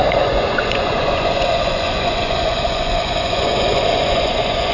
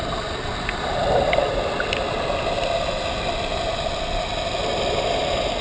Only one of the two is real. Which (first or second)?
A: second